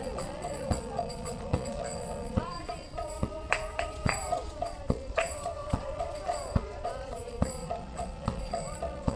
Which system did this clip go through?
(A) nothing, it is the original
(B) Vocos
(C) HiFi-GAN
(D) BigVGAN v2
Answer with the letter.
B